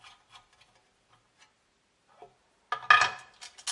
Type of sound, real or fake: real